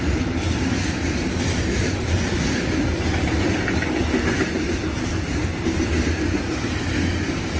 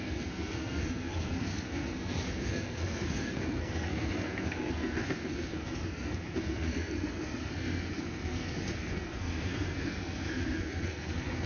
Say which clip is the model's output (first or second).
second